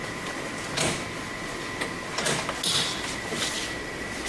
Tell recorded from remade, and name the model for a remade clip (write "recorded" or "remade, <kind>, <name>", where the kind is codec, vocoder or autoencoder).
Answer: recorded